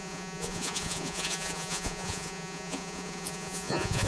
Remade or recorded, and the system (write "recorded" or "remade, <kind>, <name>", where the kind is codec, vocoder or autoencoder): remade, vocoder, Vocos